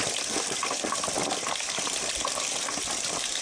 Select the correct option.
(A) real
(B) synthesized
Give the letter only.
A